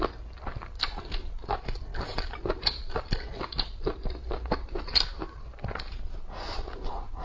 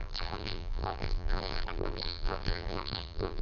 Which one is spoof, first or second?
second